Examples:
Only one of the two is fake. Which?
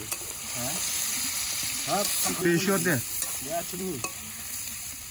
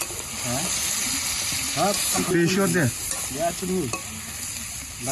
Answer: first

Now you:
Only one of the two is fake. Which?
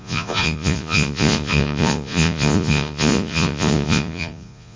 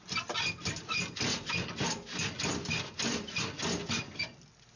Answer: first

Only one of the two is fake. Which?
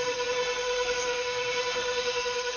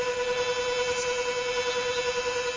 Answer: first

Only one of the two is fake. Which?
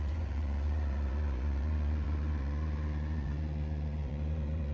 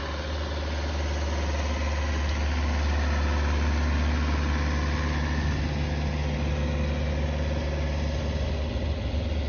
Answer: first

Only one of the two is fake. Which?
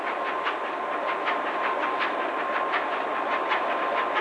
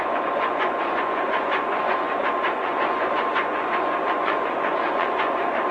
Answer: second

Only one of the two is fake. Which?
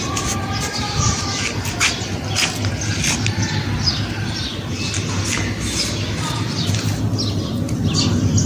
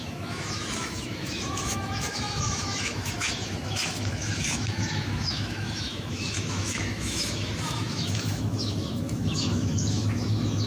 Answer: second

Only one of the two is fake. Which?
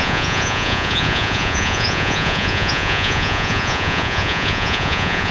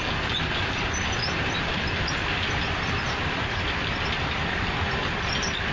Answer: first